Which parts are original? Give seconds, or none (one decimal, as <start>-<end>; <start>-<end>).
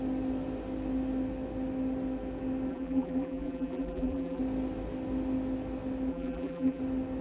0.0-2.7; 4.4-6.1; 6.8-7.2